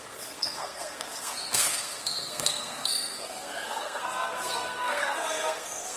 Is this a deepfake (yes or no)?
yes